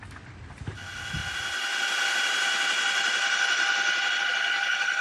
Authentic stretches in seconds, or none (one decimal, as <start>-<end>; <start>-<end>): 0.0-5.0

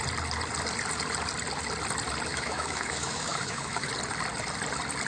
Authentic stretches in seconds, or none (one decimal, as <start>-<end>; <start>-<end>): 0.0-2.3; 3.9-5.1

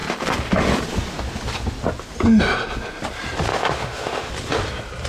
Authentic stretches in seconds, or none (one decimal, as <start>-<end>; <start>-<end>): 0.0-3.5; 4.3-5.1

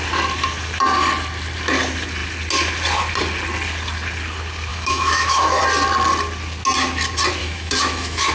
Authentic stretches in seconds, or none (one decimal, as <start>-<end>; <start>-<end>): 0.0-4.7; 5.6-7.4

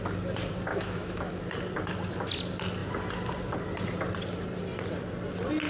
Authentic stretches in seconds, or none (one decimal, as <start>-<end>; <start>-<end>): 0.0-0.7; 1.4-5.7

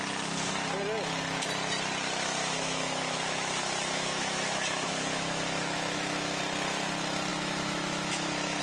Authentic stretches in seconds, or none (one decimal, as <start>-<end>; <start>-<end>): 0.0-2.4; 6.4-7.3

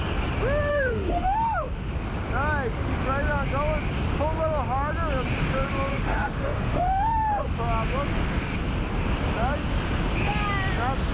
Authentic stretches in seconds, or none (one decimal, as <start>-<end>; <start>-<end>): 0.0-0.7; 1.9-5.9; 7.4-11.1